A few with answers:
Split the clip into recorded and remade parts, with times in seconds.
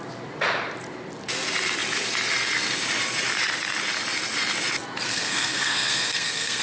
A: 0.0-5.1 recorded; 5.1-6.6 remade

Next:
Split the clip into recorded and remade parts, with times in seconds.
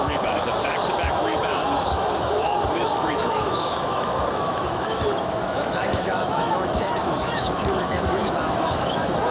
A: 0.0-9.3 remade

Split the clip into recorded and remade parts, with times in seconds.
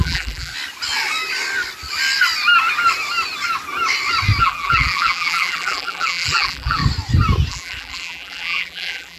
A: 0.0-0.5 remade; 0.5-4.4 recorded; 4.4-6.8 remade; 6.8-7.5 recorded; 7.5-9.2 remade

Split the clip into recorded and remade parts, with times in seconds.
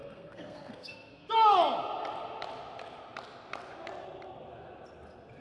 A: 0.0-1.3 remade; 1.3-5.4 recorded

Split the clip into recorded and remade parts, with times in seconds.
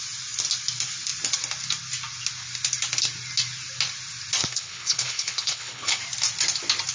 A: 0.0-4.4 recorded; 4.4-6.0 remade; 6.0-6.9 recorded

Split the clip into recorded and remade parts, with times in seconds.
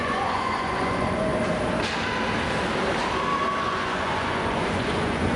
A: 0.0-1.3 remade; 1.3-3.6 recorded; 3.6-5.4 remade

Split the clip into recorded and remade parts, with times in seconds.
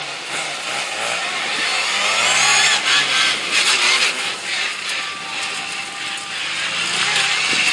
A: 0.0-7.7 recorded